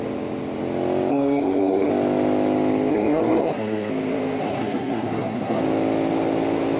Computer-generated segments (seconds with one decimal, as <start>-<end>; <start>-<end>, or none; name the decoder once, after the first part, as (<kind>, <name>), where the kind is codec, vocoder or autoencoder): 1.1-1.9 (codec, SNAC); 2.9-3.9; 4.4-5.6